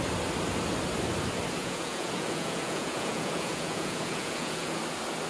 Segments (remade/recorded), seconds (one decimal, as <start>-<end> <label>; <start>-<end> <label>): 0.0-1.6 recorded; 1.6-4.8 remade; 4.8-5.3 recorded